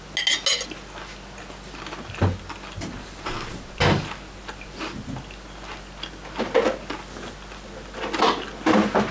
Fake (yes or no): no